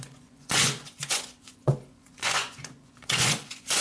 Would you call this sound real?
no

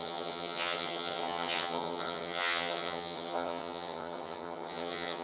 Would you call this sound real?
no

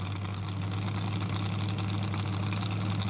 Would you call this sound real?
yes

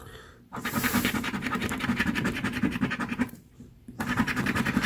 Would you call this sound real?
no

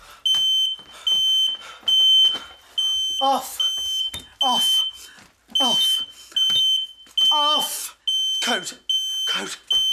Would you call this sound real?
yes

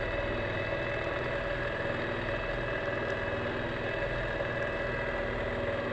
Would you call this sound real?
yes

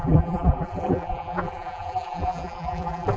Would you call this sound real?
no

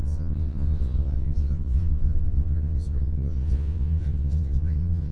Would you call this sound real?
no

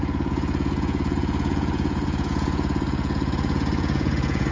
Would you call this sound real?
no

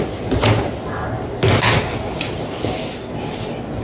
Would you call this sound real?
yes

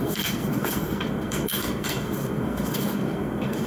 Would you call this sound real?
no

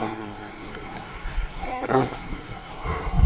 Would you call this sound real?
no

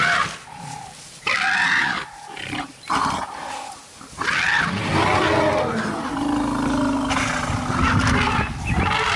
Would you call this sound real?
yes